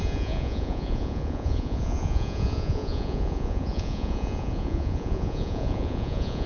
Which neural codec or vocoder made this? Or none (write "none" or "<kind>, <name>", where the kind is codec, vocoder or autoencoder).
vocoder, Vocos